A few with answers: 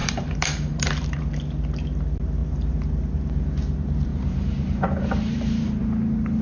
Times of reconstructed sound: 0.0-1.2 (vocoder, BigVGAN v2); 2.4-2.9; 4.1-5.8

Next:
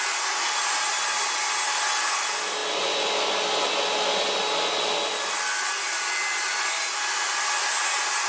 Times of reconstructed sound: none

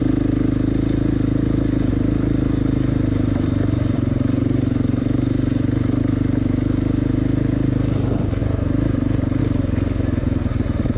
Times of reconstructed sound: 1.9-6.0 (vocoder, BigVGAN v2); 8.4-9.4